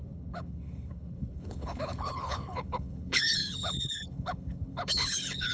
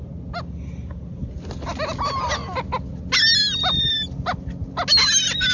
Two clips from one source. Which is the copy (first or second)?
first